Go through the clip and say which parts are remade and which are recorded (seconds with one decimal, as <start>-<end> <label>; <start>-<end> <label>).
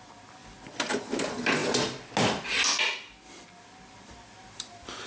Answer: 0.0-0.4 recorded; 0.4-1.0 remade; 1.0-5.1 recorded